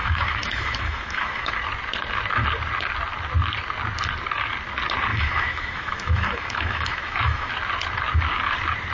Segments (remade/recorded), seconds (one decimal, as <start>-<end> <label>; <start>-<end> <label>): 0.0-1.5 remade; 1.5-5.1 recorded; 5.1-7.5 remade; 7.5-8.9 recorded